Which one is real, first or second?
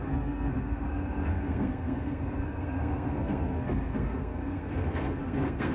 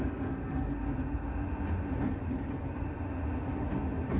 second